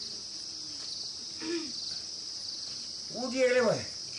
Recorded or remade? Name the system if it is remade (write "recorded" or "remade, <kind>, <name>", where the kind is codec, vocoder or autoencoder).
recorded